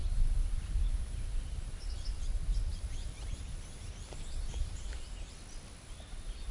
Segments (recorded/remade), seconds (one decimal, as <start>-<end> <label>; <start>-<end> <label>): 0.0-1.8 remade; 1.8-2.7 recorded; 2.7-5.3 remade; 5.3-6.5 recorded